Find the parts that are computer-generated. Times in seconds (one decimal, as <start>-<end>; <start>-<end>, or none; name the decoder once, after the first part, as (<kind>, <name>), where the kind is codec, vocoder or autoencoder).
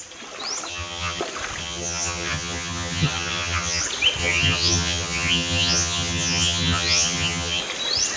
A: 0.7-1.2 (vocoder, HiFi-GAN); 1.6-3.8; 4.2-7.6